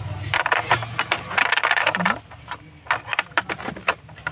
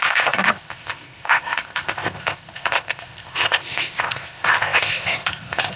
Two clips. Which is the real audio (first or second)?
first